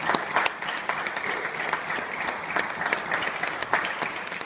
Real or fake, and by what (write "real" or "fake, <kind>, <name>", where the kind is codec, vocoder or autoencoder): real